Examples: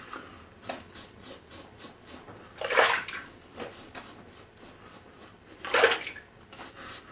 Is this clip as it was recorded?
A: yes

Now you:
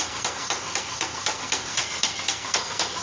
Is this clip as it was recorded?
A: no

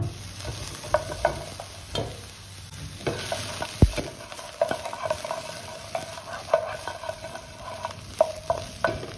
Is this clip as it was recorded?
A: yes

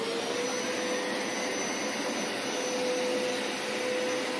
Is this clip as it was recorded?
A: yes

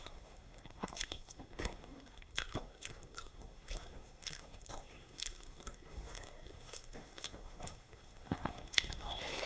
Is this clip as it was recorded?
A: no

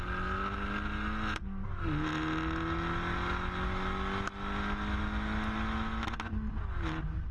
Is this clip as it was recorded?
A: yes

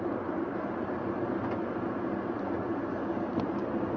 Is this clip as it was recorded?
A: yes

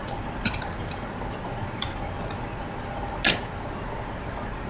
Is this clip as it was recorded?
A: yes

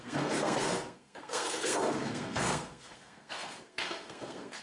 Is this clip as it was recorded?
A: no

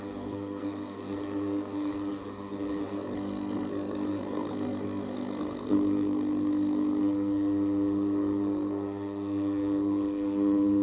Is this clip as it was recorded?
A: no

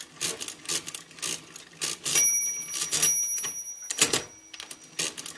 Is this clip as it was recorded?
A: yes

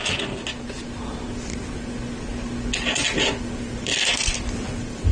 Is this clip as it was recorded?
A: yes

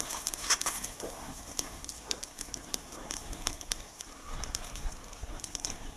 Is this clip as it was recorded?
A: no